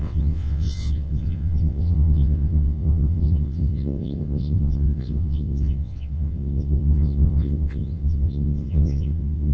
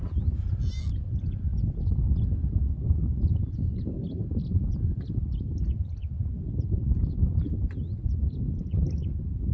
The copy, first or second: first